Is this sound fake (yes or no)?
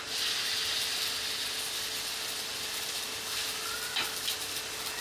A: yes